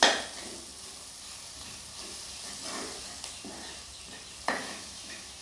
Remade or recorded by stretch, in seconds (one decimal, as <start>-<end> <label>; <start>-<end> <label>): 0.0-4.6 recorded; 4.6-5.4 remade